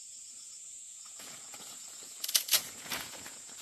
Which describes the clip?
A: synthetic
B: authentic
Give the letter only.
A